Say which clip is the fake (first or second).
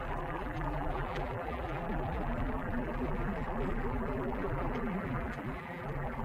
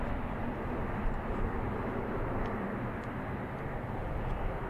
first